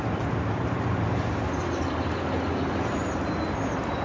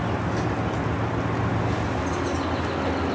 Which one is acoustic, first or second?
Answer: second